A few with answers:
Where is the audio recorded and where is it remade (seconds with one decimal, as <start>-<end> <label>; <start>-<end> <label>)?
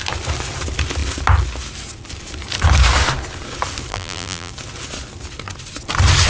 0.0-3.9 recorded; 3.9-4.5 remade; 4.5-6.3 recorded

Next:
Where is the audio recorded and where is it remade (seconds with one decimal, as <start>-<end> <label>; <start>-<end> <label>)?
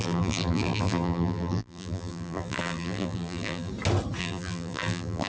0.0-3.7 remade; 3.7-4.2 recorded; 4.2-5.3 remade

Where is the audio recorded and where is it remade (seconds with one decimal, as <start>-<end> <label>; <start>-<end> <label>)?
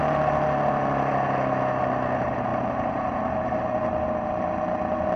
0.0-5.2 recorded